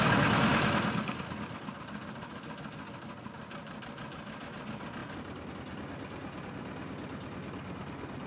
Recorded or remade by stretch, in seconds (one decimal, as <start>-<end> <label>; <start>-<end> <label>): 0.0-8.3 recorded